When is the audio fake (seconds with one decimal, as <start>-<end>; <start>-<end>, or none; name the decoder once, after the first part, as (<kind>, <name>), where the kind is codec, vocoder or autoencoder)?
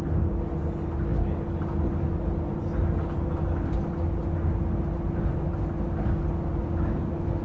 none